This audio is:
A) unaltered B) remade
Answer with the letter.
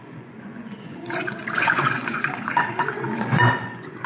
B